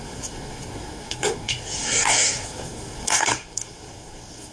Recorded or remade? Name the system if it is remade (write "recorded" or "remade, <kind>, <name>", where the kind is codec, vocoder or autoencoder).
remade, codec, SNAC